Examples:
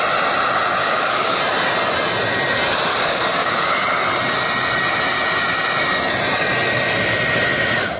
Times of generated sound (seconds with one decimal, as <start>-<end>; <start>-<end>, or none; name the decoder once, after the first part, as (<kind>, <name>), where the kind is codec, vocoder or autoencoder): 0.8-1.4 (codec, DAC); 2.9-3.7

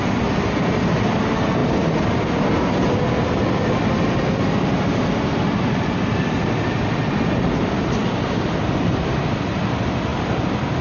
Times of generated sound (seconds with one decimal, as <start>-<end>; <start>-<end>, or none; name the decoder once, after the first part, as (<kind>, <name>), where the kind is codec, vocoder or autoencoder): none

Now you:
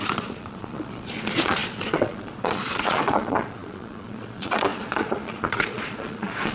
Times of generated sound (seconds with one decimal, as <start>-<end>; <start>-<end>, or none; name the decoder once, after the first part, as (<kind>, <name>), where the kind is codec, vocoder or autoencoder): 0.0-6.5 (vocoder, Vocos)